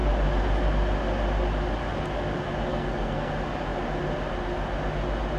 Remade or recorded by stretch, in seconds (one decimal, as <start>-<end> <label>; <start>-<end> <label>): 0.0-2.7 recorded; 2.7-3.3 remade; 3.3-5.4 recorded

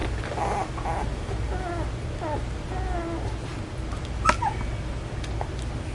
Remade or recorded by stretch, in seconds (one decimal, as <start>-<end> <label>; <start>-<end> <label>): 0.0-5.9 recorded